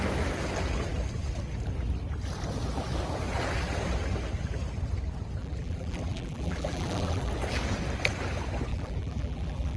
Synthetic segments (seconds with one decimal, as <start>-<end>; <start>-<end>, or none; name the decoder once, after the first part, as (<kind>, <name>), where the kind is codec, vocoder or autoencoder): 5.4-7.3 (vocoder, BigVGAN v2); 8.7-9.8